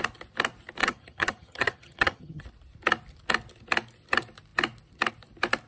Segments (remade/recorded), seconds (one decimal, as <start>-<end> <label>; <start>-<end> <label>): 0.0-0.8 recorded; 0.8-2.4 remade; 2.4-5.7 recorded